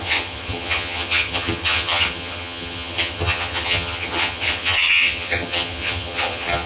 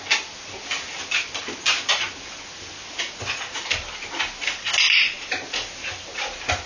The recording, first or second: second